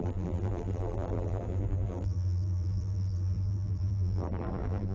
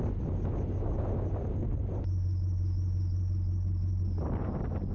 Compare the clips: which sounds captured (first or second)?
second